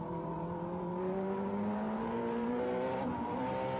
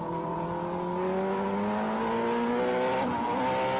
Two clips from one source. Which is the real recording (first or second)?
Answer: second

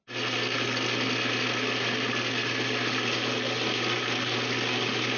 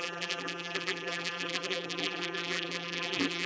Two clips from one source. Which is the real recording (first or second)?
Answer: first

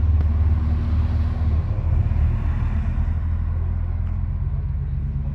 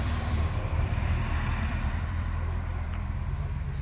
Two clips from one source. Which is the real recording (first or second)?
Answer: first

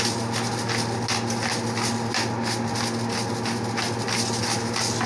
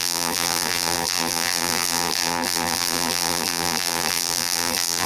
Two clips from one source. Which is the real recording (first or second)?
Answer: first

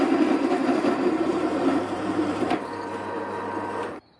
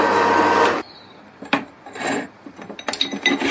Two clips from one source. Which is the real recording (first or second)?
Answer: second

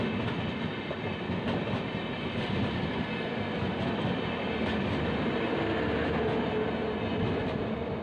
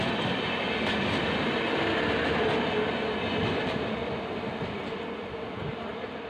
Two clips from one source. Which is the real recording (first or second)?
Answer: first